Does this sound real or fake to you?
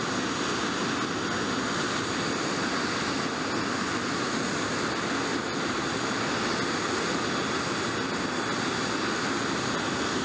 real